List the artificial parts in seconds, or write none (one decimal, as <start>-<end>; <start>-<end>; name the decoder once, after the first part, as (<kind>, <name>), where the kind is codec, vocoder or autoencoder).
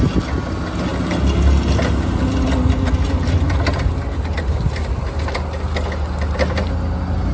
none